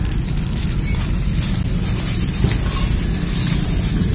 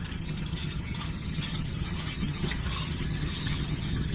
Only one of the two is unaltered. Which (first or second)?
first